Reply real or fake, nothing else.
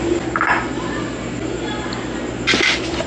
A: real